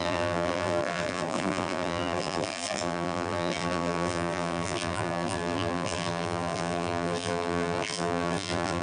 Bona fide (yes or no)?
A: no